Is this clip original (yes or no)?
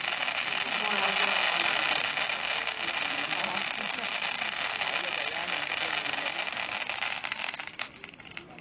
yes